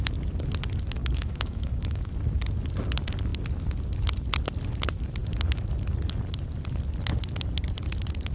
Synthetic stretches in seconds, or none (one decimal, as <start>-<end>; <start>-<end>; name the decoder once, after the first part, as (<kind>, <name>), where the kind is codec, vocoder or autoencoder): 1.0-2.1 (codec, DAC)